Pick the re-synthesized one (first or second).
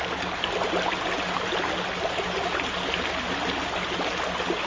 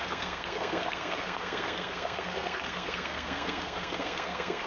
second